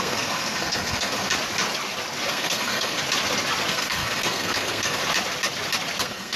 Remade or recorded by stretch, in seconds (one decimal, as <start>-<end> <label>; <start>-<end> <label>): 0.0-1.3 remade; 1.3-2.3 recorded; 2.3-3.0 remade; 3.0-3.7 recorded; 3.7-5.0 remade; 5.0-6.0 recorded; 6.0-6.4 remade